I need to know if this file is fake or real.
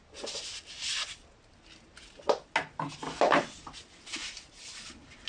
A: real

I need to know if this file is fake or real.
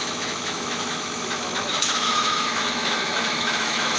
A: fake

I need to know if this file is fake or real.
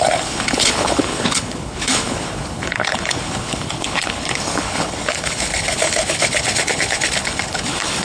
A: fake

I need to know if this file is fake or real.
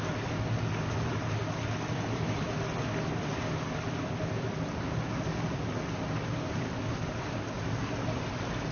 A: real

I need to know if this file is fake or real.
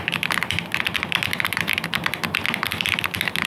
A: fake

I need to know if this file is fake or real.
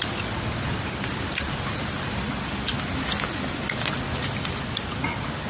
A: real